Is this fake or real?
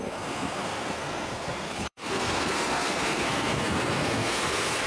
fake